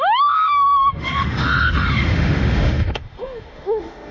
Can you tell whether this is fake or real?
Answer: fake